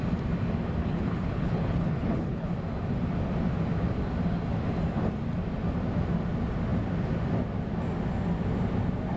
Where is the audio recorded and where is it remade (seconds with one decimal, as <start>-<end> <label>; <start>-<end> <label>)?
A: 0.0-0.8 recorded; 0.8-2.5 remade; 2.5-9.2 recorded